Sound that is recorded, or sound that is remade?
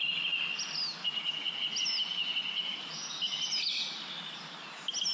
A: recorded